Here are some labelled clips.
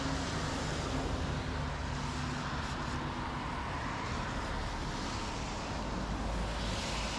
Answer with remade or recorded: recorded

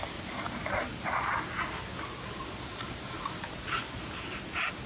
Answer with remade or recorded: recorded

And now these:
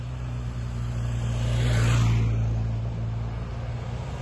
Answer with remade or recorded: recorded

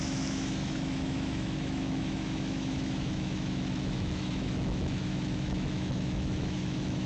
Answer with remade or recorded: remade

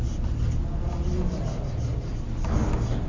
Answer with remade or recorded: recorded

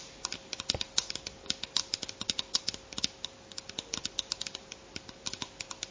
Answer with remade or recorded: recorded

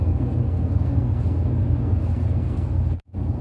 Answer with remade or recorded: remade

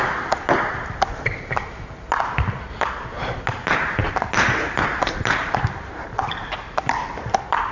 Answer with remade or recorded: recorded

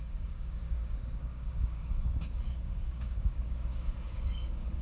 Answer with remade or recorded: remade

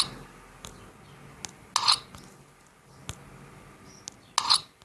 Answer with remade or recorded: recorded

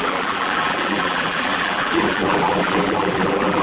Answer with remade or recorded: remade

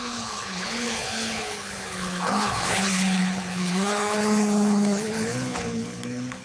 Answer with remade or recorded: remade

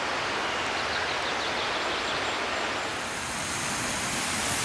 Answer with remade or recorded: recorded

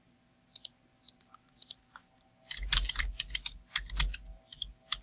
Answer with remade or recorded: recorded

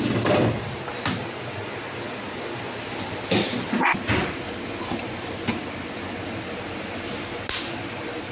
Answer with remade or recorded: recorded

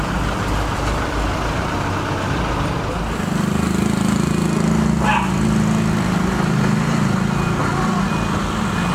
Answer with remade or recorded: recorded